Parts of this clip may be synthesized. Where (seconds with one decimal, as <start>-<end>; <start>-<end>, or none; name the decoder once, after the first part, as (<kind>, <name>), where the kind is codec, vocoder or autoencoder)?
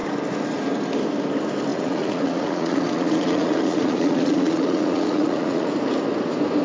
1.7-5.7 (vocoder, Vocos)